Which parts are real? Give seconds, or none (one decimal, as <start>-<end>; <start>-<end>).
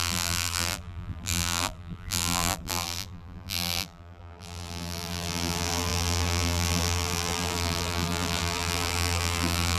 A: none